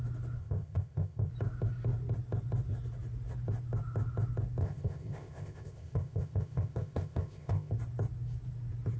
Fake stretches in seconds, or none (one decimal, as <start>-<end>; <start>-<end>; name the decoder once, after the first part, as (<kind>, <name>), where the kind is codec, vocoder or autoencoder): 0.4-1.3 (codec, ZipCodec); 4.6-7.7